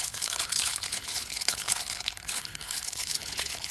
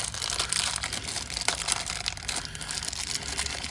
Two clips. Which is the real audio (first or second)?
second